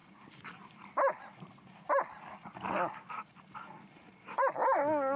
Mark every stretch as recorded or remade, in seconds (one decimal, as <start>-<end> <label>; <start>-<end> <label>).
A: 0.0-5.2 recorded